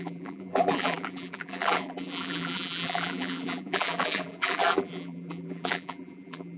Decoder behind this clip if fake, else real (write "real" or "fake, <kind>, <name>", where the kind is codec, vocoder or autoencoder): fake, vocoder, BigVGAN v2